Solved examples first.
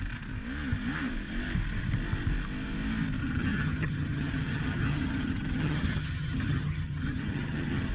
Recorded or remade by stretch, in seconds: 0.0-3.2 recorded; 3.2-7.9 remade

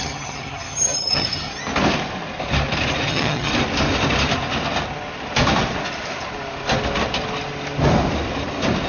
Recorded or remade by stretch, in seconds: 0.0-1.5 remade; 1.5-3.1 recorded; 3.1-3.5 remade; 3.5-8.9 recorded

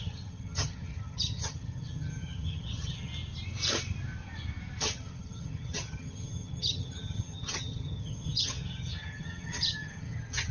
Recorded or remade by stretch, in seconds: 0.0-3.1 remade; 3.1-4.8 recorded; 4.8-10.5 remade

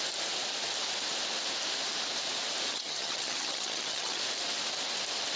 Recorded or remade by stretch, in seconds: 0.0-2.7 recorded; 2.7-4.2 remade; 4.2-5.4 recorded

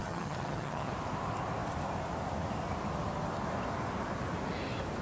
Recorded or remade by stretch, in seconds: 0.0-0.9 remade; 0.9-5.0 recorded

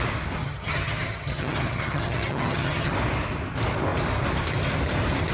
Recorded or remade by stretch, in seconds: 0.0-0.4 recorded; 0.4-2.9 remade; 2.9-5.3 recorded

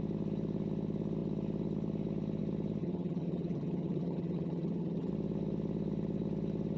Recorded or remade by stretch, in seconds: 0.0-2.8 recorded; 2.8-5.1 remade; 5.1-6.8 recorded